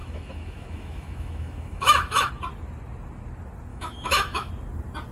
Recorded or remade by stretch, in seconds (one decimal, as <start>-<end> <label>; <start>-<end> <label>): 0.0-2.3 remade; 2.3-3.7 recorded; 3.7-4.5 remade; 4.5-5.1 recorded